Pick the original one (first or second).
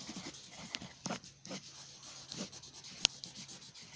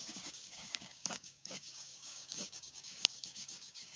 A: first